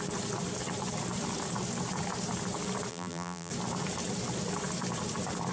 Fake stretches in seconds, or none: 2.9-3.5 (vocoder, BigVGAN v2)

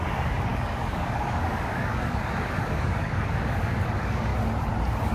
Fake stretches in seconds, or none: 0.0-4.3 (codec, DAC)

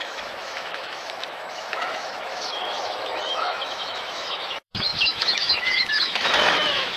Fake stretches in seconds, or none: 0.0-7.0 (autoencoder, DAC-VAE)

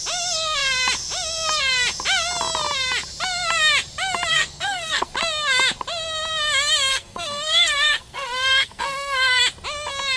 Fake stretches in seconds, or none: 4.3-5.1 (codec, SNAC); 6.9-9.4

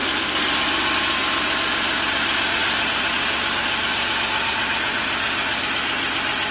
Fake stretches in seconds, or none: none

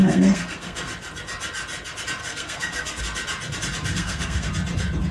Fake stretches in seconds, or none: 0.0-0.9 (codec, SNAC); 2.2-3.0; 3.9-4.5

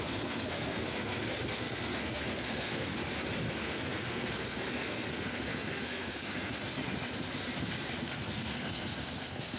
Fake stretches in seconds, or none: 0.0-2.9 (codec, SNAC); 3.6-6.8; 8.0-9.6

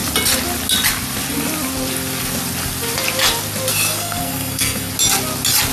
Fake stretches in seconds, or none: 3.7-4.9 (codec, SNAC)